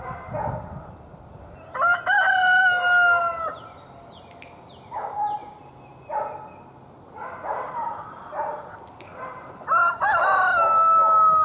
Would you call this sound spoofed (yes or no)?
no